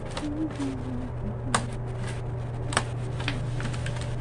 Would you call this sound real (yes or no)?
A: yes